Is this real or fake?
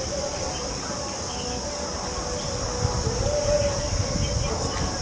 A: real